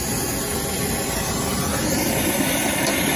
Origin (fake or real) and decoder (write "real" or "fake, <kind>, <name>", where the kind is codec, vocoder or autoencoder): real